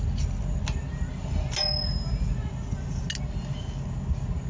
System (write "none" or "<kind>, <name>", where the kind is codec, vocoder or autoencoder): none